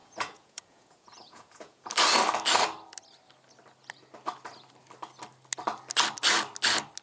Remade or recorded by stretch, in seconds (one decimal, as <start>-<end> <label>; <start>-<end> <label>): 0.0-1.9 remade; 1.9-7.0 recorded